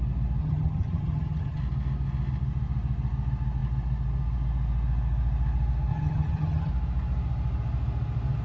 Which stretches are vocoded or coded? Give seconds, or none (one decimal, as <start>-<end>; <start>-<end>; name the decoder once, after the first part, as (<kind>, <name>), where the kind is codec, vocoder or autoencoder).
0.4-1.6 (vocoder, HiFi-GAN); 5.9-6.7